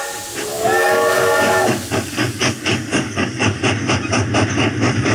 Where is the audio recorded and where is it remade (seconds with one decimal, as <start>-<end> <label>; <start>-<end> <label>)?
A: 0.0-0.5 recorded; 0.5-3.6 remade; 3.6-5.1 recorded